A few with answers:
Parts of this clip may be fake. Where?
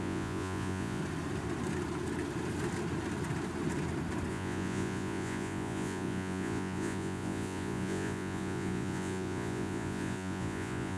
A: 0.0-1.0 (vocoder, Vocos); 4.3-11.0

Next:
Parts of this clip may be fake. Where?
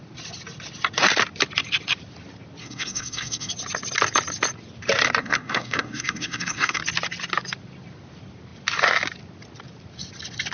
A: 2.6-3.5 (codec, SNAC); 5.2-6.8